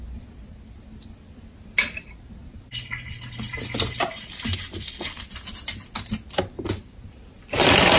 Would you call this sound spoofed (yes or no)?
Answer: no